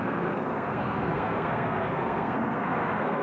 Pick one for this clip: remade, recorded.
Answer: remade